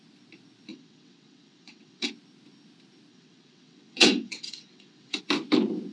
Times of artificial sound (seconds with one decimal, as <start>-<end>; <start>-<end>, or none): 0.7-2.1; 3.1-5.2